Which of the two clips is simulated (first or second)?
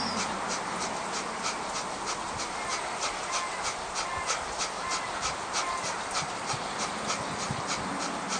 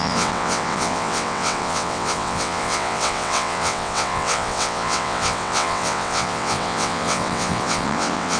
second